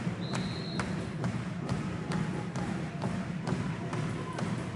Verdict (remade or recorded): remade